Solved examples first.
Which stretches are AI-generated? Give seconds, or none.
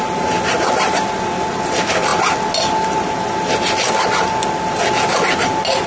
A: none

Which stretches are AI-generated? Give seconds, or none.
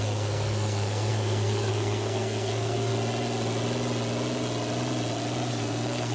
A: 0.0-2.9 (codec, SNAC); 5.5-6.1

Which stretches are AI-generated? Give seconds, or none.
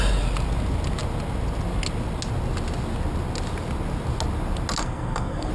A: 4.8-5.5 (codec, SNAC)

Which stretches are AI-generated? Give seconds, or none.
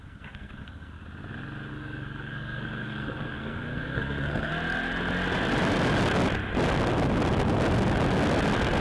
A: 0.0-1.0 (codec, SNAC); 1.7-4.5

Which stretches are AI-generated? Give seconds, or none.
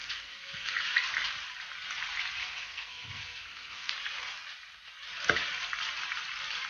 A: 0.0-0.8 (codec, SNAC); 2.4-3.9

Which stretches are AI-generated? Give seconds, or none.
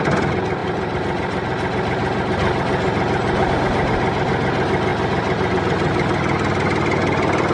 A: none